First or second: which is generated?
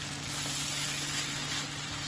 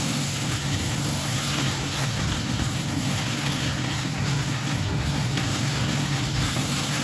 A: second